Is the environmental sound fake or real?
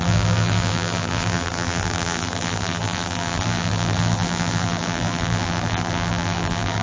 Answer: fake